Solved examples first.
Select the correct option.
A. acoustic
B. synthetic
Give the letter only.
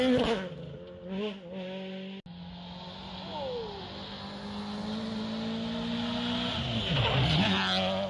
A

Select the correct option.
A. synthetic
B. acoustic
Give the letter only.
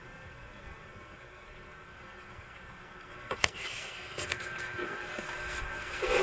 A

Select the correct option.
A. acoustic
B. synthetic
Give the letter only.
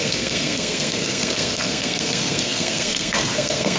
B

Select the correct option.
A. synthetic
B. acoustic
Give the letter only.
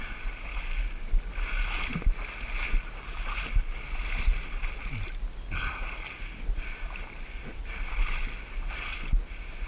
B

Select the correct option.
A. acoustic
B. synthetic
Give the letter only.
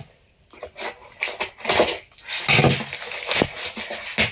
A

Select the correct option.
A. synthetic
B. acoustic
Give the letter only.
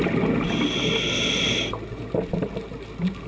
B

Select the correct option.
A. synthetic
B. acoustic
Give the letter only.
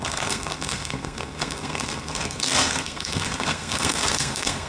A